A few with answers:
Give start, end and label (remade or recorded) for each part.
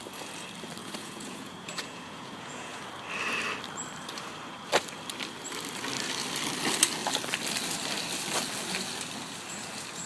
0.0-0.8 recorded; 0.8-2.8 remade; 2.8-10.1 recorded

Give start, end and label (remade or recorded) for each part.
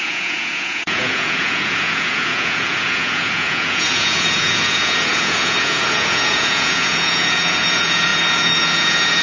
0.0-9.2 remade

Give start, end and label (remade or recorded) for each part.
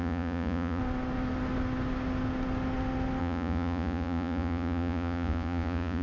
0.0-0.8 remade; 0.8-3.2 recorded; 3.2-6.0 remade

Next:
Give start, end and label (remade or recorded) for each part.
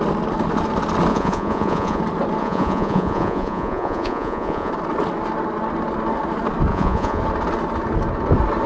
0.0-1.1 recorded; 1.1-2.0 remade; 2.0-2.4 recorded; 2.4-4.7 remade; 4.7-6.7 recorded; 6.7-7.2 remade; 7.2-8.7 recorded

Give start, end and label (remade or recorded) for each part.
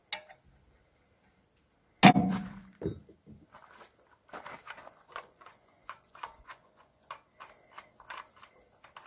0.0-2.2 recorded; 2.2-2.8 remade; 2.8-4.8 recorded; 4.8-7.1 remade; 7.1-9.1 recorded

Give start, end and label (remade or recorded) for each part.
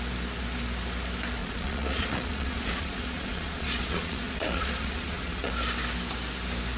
0.0-1.4 recorded; 1.4-5.5 remade; 5.5-6.8 recorded